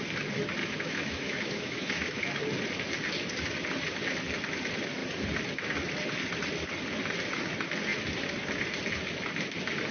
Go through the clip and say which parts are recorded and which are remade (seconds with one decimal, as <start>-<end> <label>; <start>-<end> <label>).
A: 0.0-0.6 recorded; 0.6-2.4 remade; 2.4-9.9 recorded